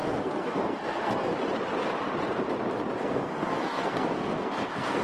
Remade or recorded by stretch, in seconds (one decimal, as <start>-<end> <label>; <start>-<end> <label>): 0.0-1.3 remade; 1.3-3.0 recorded; 3.0-5.0 remade